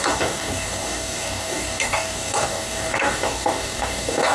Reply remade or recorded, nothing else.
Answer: remade